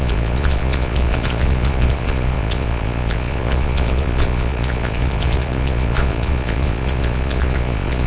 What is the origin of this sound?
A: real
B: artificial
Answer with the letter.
B